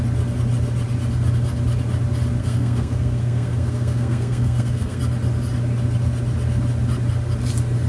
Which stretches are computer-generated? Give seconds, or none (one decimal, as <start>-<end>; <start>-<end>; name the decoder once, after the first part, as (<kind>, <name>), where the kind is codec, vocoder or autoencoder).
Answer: 2.4-5.0 (codec, SNAC)